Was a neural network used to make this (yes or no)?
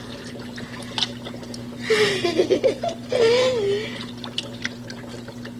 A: no